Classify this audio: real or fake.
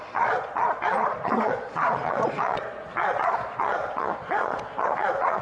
fake